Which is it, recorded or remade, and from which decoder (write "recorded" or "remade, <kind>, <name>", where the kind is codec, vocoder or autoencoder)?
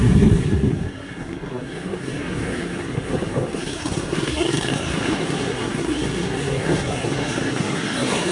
remade, codec, SNAC